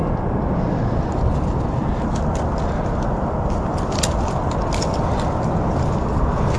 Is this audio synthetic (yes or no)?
no